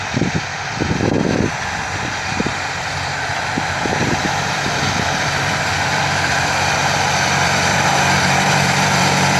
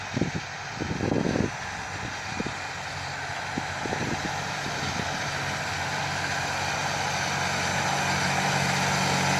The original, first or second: second